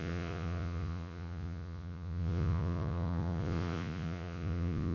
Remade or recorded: remade